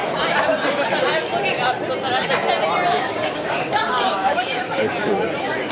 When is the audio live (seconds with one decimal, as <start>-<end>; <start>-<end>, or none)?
0.0-2.9; 4.9-5.7